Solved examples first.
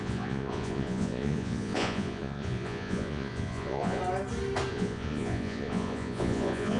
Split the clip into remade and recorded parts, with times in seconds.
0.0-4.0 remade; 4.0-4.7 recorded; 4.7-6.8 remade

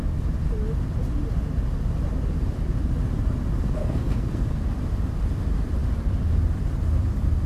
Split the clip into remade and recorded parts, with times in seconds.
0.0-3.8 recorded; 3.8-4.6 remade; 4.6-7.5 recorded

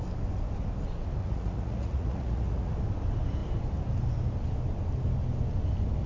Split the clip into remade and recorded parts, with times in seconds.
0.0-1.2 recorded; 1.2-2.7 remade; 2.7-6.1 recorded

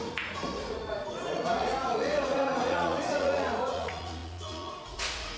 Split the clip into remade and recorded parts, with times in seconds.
0.0-5.4 remade

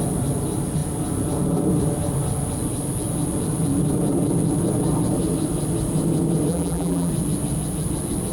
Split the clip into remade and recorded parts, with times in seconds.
0.0-6.5 recorded; 6.5-7.1 remade; 7.1-8.3 recorded

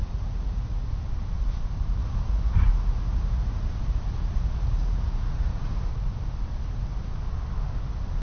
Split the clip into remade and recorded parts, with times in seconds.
0.0-0.9 remade; 0.9-2.0 recorded; 2.0-5.9 remade; 5.9-8.2 recorded

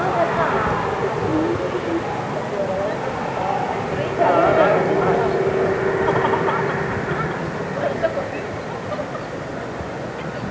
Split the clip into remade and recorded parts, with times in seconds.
0.0-9.5 recorded; 9.5-10.5 remade

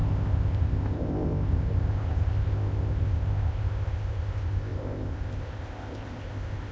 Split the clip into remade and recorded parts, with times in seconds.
0.0-6.7 remade